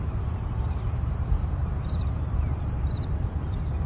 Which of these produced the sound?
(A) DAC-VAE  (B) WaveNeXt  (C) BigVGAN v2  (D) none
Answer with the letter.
C